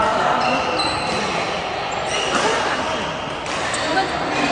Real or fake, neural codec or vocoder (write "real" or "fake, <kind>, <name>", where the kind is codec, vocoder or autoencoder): real